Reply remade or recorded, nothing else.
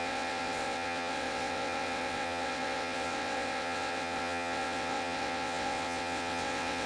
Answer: remade